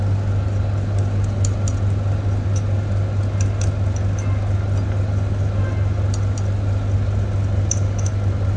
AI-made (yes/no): no